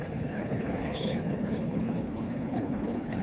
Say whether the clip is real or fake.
fake